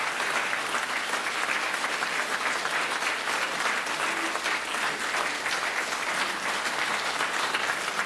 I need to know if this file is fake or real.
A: real